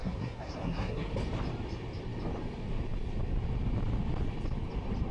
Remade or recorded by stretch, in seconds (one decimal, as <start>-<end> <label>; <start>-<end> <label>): 0.0-1.1 remade; 1.1-5.1 recorded